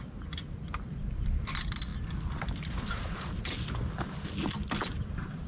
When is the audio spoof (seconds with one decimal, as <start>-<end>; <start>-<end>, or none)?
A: none

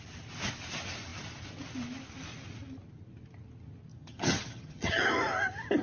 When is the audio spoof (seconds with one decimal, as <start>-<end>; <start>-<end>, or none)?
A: 3.9-5.0

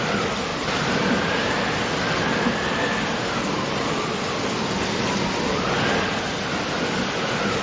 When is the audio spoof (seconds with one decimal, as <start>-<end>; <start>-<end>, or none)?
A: none

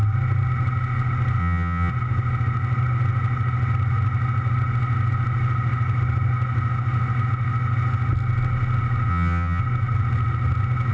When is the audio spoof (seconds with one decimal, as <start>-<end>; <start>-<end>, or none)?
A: 1.4-1.9; 9.1-9.6

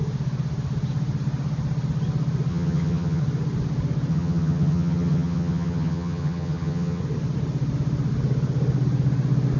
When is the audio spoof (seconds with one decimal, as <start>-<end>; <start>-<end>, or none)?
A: 2.5-3.2; 4.1-7.0

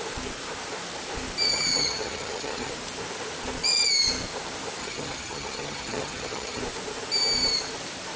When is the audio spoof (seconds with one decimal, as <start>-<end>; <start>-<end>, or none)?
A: 1.5-2.7; 4.8-6.6

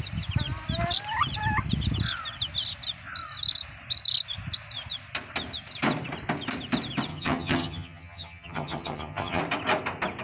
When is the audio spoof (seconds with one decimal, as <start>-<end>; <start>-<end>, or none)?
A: 7.1-9.4